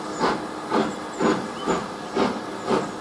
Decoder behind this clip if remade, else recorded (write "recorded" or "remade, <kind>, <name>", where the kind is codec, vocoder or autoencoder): recorded